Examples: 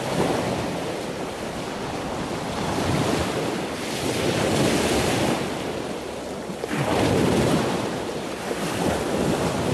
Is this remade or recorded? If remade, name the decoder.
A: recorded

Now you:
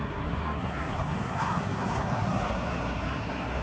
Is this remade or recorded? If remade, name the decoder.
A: remade, codec, SNAC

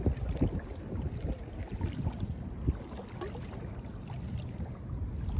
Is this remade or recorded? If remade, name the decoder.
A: recorded